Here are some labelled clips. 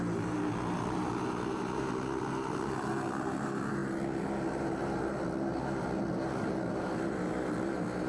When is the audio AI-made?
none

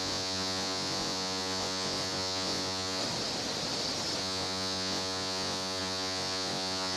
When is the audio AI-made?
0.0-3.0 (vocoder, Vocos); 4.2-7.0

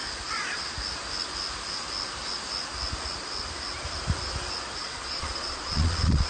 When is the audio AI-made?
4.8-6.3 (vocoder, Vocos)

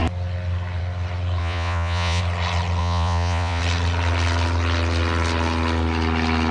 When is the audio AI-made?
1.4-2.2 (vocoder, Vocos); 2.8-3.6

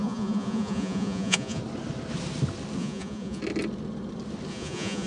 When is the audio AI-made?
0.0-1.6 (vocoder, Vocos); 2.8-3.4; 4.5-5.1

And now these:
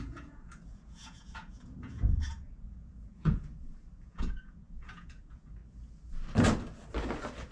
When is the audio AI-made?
0.0-3.5 (vocoder, Vocos); 4.0-5.6

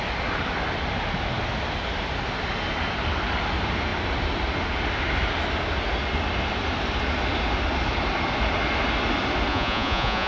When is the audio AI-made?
9.5-10.3 (vocoder, Vocos)

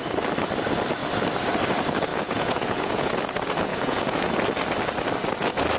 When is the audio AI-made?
2.1-3.1 (vocoder, Vocos); 3.7-4.3